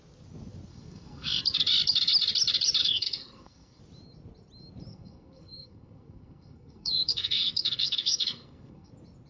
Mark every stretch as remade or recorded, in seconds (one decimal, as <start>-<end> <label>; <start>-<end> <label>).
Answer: 0.0-0.7 recorded; 0.7-1.4 remade; 1.4-2.8 recorded; 2.8-3.8 remade; 3.8-4.9 recorded; 4.9-8.9 remade; 8.9-9.3 recorded